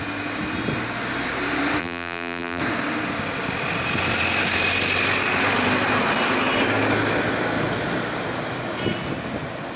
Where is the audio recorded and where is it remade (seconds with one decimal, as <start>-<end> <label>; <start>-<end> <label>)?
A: 0.0-1.8 recorded; 1.8-2.6 remade; 2.6-9.8 recorded

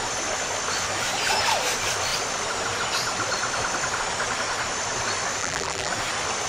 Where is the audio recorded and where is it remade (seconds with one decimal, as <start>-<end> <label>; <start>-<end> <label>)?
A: 0.0-5.4 recorded; 5.4-5.9 remade; 5.9-6.5 recorded

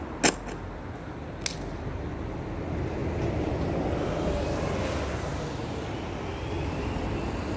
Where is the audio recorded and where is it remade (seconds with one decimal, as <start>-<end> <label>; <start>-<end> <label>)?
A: 0.0-7.6 recorded

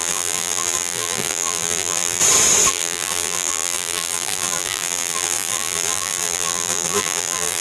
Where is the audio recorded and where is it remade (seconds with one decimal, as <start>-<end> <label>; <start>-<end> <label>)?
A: 0.0-2.2 remade; 2.2-2.7 recorded; 2.7-7.6 remade

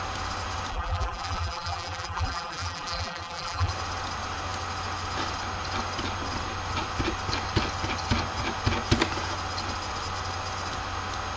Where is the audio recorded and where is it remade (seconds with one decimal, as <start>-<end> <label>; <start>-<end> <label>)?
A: 0.0-0.7 recorded; 0.7-3.7 remade; 3.7-11.4 recorded